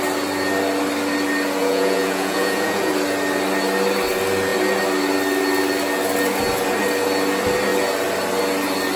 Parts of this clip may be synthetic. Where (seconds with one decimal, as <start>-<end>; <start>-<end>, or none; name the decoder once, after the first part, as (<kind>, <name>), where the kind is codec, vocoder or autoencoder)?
1.6-2.9 (vocoder, Vocos)